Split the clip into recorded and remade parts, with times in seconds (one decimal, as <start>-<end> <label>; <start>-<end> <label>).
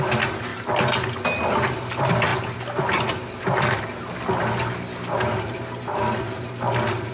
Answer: 0.0-7.1 recorded